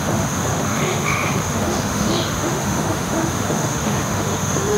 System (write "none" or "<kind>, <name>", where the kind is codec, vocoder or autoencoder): autoencoder, DAC-VAE